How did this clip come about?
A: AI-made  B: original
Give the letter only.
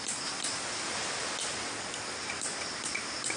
B